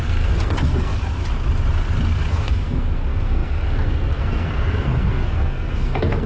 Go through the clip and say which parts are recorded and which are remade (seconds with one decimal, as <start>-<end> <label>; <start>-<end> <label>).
0.0-0.9 remade; 0.9-2.3 recorded; 2.3-6.3 remade